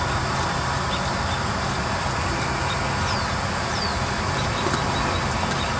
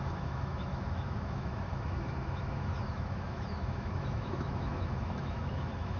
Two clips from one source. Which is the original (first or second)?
first